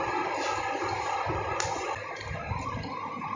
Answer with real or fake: real